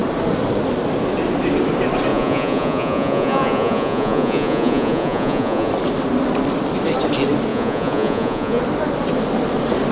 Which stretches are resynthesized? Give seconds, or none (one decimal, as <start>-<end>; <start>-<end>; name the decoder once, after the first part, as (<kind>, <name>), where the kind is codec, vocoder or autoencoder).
2.1-5.7 (vocoder, Vocos); 7.5-8.6